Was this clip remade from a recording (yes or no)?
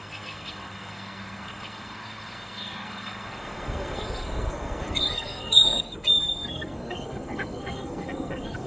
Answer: yes